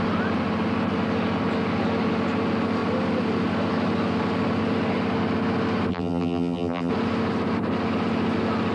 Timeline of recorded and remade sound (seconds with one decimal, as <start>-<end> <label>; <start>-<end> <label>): 0.0-5.9 recorded; 5.9-6.9 remade; 6.9-8.7 recorded